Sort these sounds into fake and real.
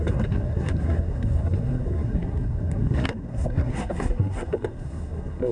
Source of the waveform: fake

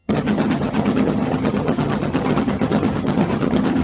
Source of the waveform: fake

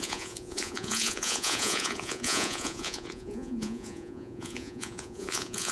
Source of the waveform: fake